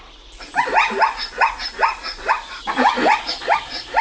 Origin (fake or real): real